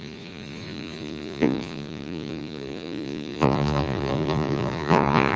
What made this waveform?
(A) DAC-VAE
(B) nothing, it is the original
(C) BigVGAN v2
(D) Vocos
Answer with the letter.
D